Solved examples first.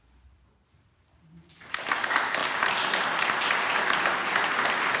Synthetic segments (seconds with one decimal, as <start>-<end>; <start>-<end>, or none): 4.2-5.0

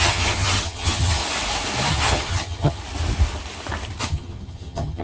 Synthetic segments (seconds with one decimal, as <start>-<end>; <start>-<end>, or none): 0.0-1.2; 1.9-2.8; 4.0-5.0

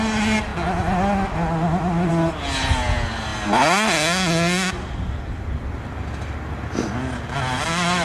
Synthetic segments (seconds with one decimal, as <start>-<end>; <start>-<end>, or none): none